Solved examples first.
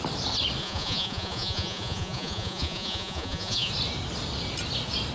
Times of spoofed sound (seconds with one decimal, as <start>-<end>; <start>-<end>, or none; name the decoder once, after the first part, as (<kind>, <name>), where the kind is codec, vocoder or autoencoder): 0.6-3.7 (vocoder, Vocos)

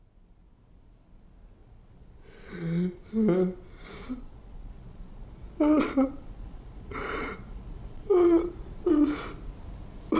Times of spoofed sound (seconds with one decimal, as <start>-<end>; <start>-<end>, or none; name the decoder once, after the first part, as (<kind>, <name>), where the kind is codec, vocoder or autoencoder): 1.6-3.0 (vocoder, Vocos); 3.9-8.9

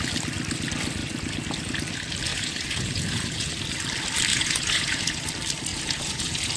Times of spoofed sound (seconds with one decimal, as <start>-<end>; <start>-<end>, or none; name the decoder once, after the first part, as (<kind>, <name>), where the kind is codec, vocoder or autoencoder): 2.3-3.5 (vocoder, Vocos); 4.3-5.3; 5.7-6.6

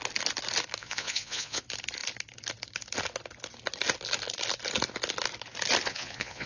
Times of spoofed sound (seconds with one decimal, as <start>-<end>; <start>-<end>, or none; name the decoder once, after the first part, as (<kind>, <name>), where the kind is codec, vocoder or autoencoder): 0.8-1.6 (vocoder, Vocos); 5.9-6.5